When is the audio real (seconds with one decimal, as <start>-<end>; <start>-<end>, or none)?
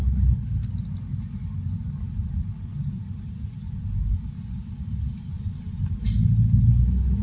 0.7-7.2